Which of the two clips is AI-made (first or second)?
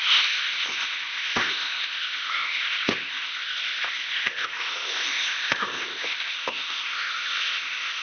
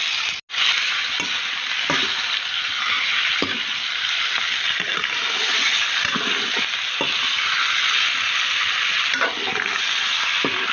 first